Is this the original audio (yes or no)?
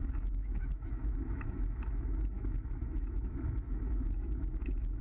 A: no